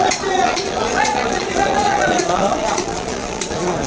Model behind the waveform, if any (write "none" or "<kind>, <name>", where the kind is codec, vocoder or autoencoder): vocoder, Vocos